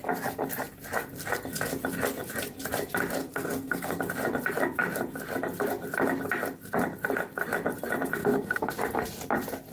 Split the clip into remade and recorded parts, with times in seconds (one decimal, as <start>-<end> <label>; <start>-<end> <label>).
0.0-3.2 recorded; 3.2-4.0 remade; 4.0-8.2 recorded; 8.2-8.7 remade; 8.7-9.7 recorded